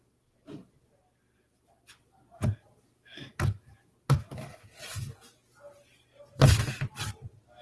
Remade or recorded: recorded